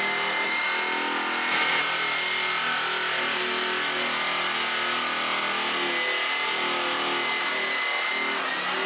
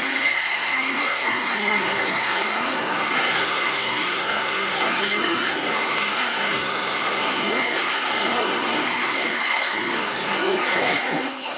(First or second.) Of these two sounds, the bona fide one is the first